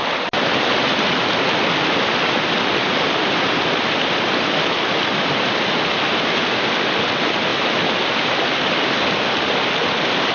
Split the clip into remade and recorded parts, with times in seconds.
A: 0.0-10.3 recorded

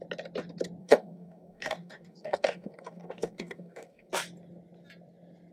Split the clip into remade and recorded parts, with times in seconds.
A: 0.0-0.8 recorded; 0.8-4.1 remade; 4.1-5.5 recorded

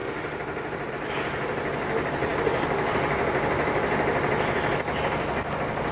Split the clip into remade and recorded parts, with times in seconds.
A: 0.0-5.9 recorded

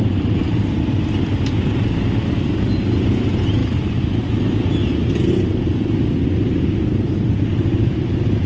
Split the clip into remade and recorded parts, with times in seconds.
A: 0.0-8.5 recorded

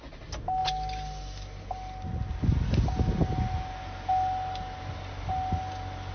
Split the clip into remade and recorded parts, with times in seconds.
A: 0.0-6.1 recorded

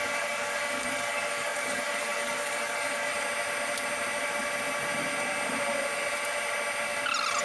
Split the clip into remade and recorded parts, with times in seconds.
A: 0.0-3.1 remade; 3.1-7.4 recorded

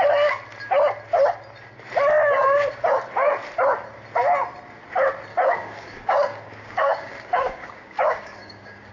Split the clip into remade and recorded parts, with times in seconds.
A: 0.0-5.3 recorded; 5.3-8.9 remade